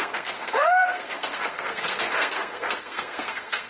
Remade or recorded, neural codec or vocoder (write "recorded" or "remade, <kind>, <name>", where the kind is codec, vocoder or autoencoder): remade, codec, SNAC